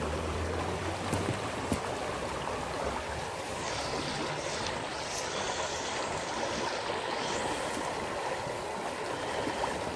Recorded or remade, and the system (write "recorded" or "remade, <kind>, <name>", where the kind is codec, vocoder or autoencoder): recorded